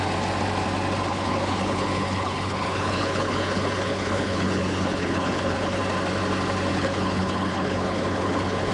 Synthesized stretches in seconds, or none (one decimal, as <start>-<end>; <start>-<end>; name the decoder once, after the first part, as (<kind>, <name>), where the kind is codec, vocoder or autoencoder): 1.1-5.8 (codec, HILCodec); 6.7-8.7